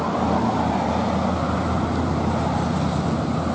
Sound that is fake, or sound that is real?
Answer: real